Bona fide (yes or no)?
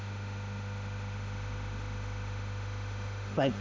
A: no